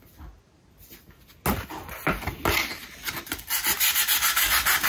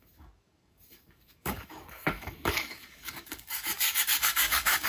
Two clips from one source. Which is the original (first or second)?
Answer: first